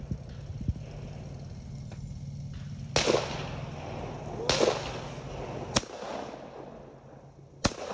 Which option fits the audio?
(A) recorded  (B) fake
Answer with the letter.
A